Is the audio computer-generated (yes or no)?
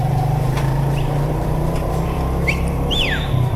yes